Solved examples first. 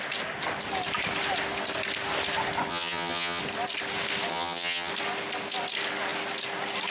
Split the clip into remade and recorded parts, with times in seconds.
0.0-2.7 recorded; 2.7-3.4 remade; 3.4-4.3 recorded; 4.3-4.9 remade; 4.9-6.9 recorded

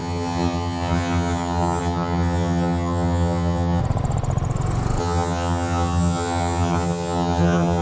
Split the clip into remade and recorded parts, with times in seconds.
0.0-3.8 remade; 3.8-5.0 recorded; 5.0-7.8 remade

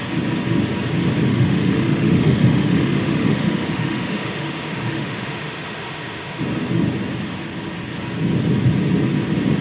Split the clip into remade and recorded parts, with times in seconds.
0.0-1.3 recorded; 1.3-6.4 remade; 6.4-9.6 recorded

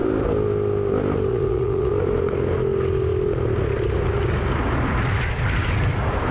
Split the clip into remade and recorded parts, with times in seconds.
0.0-1.3 recorded; 1.3-1.9 remade; 1.9-6.3 recorded

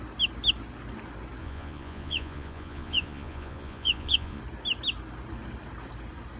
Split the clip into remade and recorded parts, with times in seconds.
0.0-1.4 recorded; 1.4-4.4 remade; 4.4-6.4 recorded

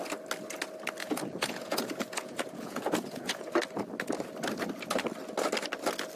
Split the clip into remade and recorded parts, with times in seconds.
0.0-1.0 recorded; 1.0-3.5 remade; 3.5-6.2 recorded

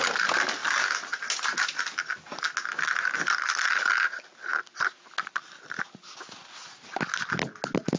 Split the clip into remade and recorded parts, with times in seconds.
0.0-8.0 recorded

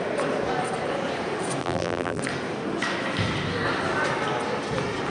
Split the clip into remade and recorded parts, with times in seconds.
0.0-1.6 recorded; 1.6-2.2 remade; 2.2-5.1 recorded